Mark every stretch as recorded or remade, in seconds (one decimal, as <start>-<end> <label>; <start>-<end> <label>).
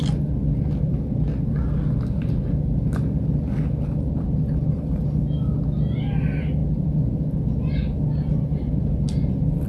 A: 0.0-9.7 recorded